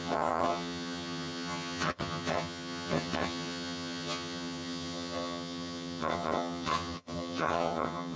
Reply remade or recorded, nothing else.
remade